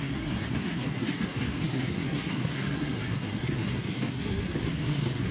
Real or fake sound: fake